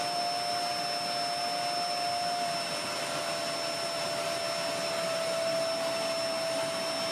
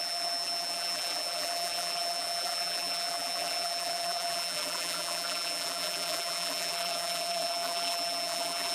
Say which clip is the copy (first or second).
second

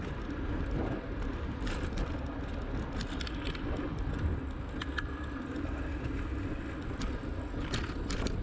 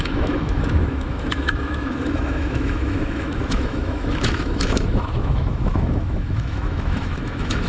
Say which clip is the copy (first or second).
second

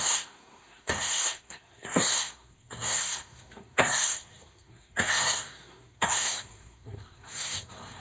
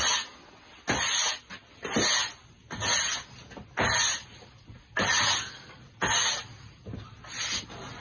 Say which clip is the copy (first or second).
first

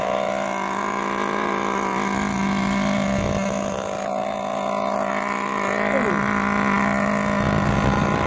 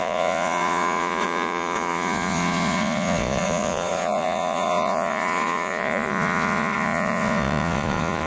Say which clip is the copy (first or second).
second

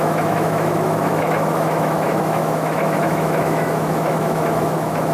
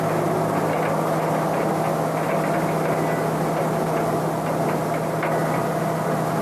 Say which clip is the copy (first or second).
first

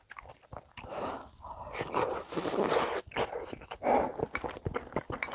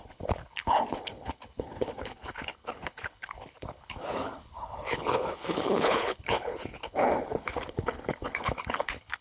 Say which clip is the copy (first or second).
second